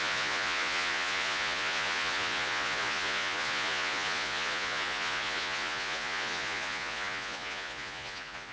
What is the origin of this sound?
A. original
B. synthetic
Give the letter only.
B